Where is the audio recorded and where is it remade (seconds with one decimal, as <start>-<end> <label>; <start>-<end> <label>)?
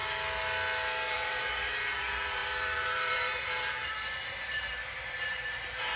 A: 0.0-1.1 recorded; 1.1-6.0 remade